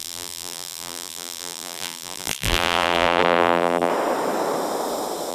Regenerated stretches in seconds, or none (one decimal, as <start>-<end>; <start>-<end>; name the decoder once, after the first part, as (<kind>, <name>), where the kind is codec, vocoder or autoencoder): 0.0-3.9 (vocoder, BigVGAN v2)